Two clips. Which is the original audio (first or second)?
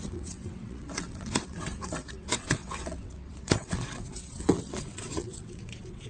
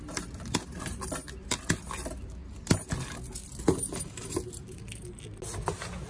second